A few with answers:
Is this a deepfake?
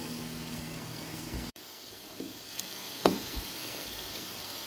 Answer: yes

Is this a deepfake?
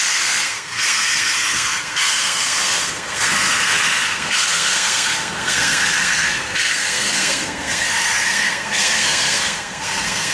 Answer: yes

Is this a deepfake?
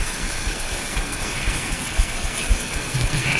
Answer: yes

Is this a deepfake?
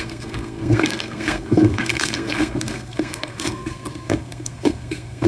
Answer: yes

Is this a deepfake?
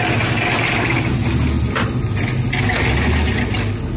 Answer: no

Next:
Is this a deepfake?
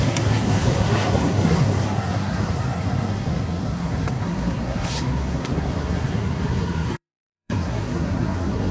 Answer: yes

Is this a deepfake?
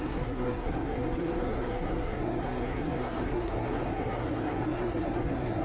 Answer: yes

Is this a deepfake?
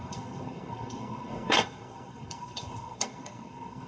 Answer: yes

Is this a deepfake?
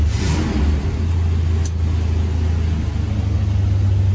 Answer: no